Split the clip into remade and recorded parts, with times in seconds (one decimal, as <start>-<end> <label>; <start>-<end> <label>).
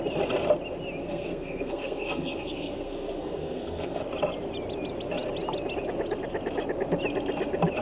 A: 0.0-1.0 recorded; 1.0-4.0 remade; 4.0-7.8 recorded